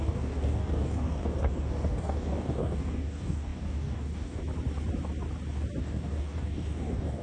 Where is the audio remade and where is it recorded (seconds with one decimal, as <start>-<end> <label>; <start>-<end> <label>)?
0.0-4.4 remade; 4.4-5.8 recorded; 5.8-7.2 remade